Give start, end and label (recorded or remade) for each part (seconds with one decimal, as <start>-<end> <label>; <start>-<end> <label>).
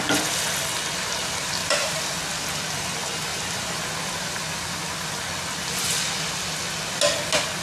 0.0-1.6 recorded; 1.6-2.2 remade; 2.2-3.3 recorded; 3.3-3.8 remade; 3.8-7.6 recorded